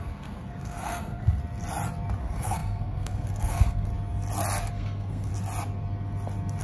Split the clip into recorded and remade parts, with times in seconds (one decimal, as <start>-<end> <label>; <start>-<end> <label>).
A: 0.0-1.4 remade; 1.4-2.2 recorded; 2.2-3.9 remade; 3.9-4.7 recorded; 4.7-5.3 remade; 5.3-6.6 recorded